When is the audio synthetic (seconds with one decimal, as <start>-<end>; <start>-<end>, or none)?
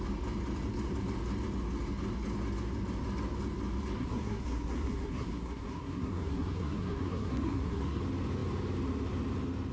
4.0-8.0